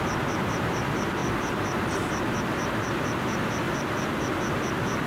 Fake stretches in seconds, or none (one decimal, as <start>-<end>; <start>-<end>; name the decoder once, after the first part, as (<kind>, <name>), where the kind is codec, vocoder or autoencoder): none